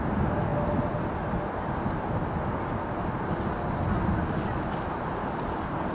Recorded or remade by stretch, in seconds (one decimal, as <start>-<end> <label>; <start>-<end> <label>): 0.0-5.9 recorded